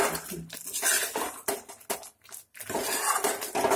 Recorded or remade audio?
recorded